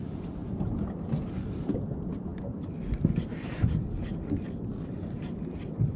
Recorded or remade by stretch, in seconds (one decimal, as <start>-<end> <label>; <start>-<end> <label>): 0.0-6.0 recorded